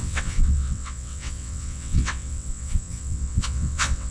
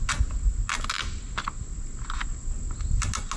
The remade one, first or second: first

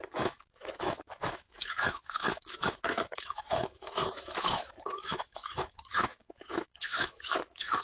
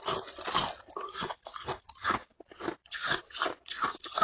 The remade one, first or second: first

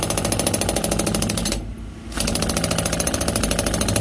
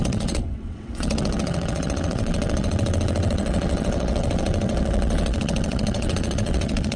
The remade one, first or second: second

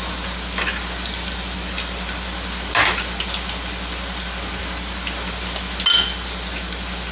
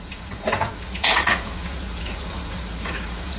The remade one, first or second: second